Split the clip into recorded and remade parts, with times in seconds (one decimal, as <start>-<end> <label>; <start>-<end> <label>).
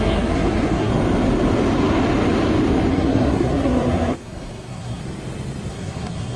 0.0-0.9 remade; 0.9-2.9 recorded; 2.9-5.0 remade; 5.0-5.7 recorded; 5.7-6.4 remade